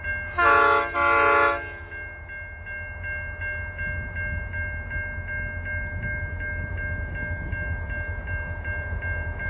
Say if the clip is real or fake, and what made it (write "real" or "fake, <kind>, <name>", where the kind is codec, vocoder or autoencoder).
real